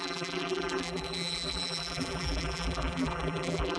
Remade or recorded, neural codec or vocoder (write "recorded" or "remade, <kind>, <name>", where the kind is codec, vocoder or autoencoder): remade, vocoder, BigVGAN v2